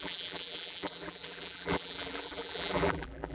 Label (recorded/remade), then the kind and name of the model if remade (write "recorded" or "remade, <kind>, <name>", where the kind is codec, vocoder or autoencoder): remade, vocoder, BigVGAN v2